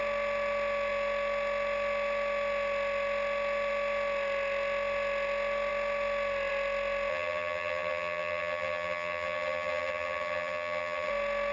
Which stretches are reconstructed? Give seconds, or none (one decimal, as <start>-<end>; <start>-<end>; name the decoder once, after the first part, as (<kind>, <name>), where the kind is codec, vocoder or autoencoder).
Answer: 7.1-11.1 (vocoder, HiFi-GAN)